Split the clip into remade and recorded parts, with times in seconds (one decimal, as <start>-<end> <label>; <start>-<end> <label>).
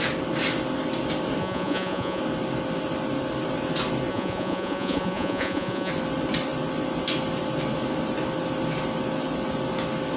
0.0-1.4 recorded; 1.4-2.2 remade; 2.2-4.1 recorded; 4.1-5.9 remade; 5.9-10.2 recorded